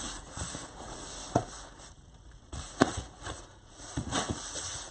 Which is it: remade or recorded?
remade